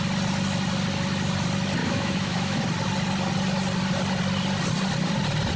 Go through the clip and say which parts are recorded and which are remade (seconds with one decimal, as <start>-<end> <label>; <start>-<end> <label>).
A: 0.0-1.8 recorded; 1.8-2.6 remade; 2.6-5.6 recorded